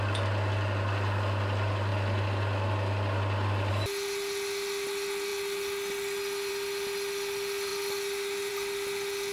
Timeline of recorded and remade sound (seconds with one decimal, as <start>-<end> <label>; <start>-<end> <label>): 0.0-9.3 recorded

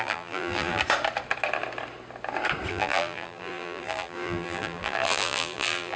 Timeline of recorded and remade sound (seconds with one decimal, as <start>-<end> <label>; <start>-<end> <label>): 0.0-0.8 remade; 0.8-2.7 recorded; 2.7-6.0 remade